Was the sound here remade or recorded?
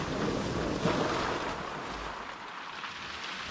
recorded